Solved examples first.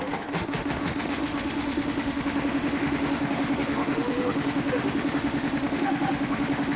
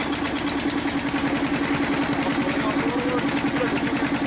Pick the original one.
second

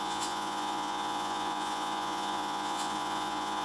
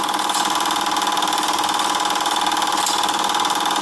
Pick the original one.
second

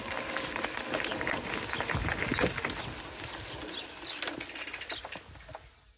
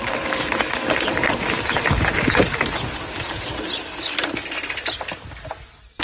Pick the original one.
first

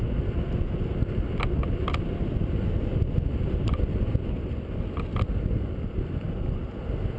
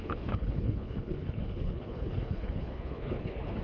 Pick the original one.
first